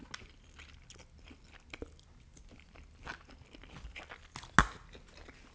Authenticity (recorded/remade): recorded